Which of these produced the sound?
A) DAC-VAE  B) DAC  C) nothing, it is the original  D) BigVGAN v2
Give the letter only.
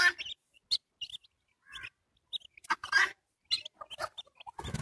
C